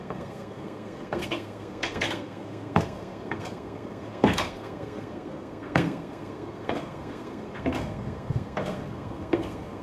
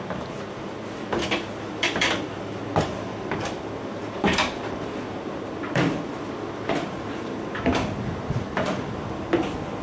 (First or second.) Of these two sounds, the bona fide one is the second